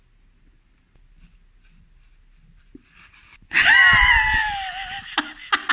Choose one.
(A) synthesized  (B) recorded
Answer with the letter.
B